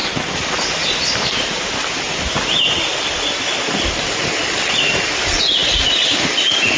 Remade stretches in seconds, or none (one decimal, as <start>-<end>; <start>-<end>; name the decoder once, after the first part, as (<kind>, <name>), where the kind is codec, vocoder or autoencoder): none